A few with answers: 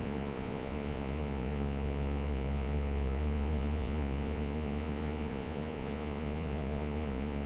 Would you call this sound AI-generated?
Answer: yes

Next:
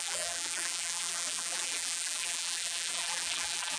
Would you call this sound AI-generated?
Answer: yes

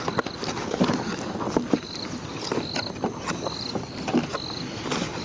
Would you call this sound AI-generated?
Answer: no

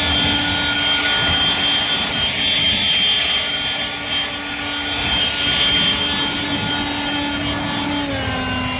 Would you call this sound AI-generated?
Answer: no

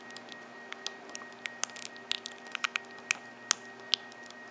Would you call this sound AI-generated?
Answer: no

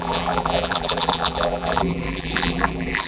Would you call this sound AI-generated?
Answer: yes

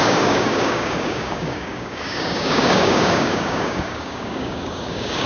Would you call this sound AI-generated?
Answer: yes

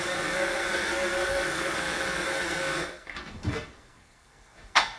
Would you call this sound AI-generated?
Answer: yes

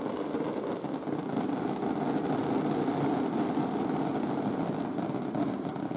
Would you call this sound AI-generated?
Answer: no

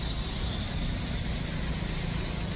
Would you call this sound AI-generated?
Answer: no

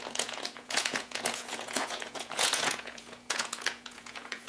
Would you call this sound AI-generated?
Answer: yes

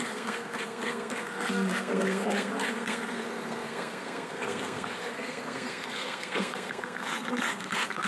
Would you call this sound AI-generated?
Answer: yes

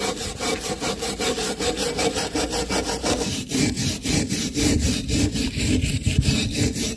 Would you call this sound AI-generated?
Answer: yes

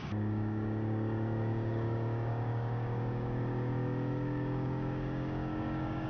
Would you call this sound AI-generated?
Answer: yes